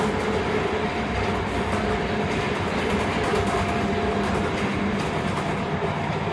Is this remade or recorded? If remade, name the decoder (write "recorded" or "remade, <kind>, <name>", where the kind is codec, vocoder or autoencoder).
recorded